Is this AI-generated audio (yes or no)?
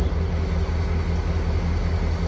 no